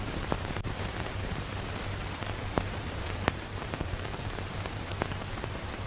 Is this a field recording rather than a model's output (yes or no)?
no